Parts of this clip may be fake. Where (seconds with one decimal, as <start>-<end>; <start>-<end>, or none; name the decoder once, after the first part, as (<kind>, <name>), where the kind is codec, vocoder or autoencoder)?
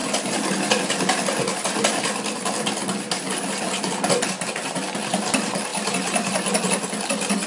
none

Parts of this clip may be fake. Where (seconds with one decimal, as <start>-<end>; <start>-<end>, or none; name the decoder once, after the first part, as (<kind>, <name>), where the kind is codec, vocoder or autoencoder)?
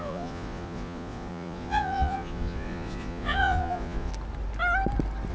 0.0-4.1 (vocoder, Vocos)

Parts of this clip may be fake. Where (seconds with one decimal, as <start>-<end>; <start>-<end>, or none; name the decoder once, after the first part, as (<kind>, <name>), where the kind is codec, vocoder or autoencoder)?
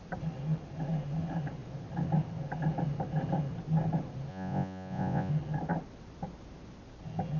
4.3-5.3 (vocoder, Vocos)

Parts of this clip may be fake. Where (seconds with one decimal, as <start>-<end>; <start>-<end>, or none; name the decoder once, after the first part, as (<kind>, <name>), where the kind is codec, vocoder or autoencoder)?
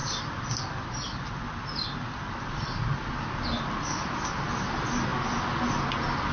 none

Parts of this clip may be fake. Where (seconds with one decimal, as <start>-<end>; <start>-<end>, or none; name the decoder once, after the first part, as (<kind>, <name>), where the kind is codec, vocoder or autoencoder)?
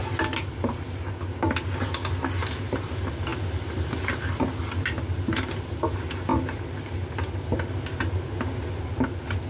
none